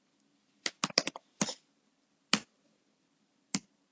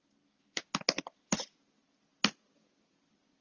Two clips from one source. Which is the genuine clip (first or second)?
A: second